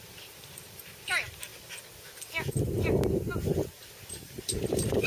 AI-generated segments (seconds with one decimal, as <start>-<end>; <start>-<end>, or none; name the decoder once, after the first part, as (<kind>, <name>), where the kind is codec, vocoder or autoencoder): 0.0-1.5 (vocoder, BigVGAN v2); 4.6-5.1